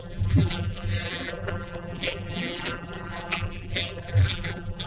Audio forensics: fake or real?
fake